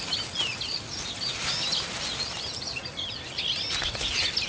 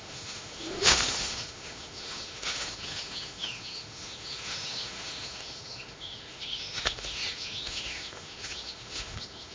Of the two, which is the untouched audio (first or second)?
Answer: first